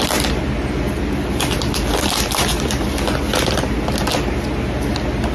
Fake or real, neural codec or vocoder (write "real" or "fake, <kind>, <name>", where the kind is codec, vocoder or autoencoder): real